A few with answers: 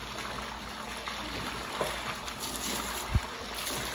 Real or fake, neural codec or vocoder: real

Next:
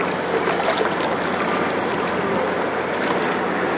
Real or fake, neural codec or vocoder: real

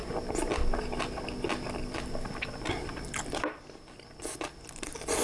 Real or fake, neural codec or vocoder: real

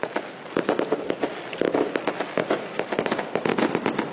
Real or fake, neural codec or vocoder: real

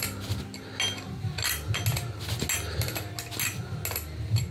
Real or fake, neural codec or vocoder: real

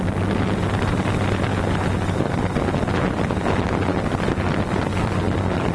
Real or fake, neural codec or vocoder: real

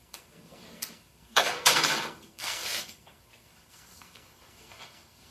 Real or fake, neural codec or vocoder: fake, codec, SNAC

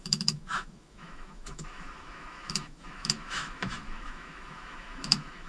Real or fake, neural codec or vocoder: fake, autoencoder, DAC-VAE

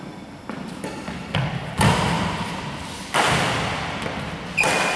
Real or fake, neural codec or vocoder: real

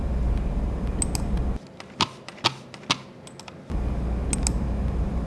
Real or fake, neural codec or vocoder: real